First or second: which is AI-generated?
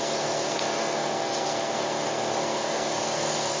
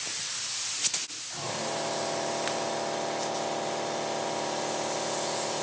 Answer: first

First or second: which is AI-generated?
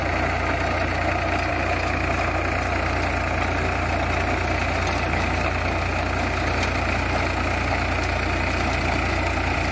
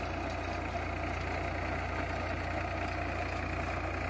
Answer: first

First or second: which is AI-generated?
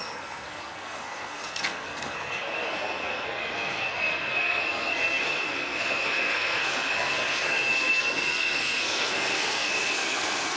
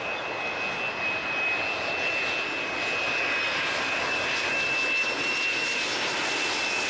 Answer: first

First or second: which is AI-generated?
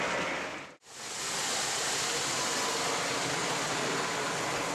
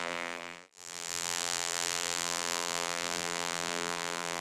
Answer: second